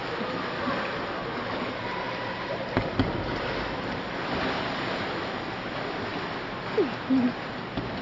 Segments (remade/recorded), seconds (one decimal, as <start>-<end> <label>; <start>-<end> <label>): 0.0-8.0 recorded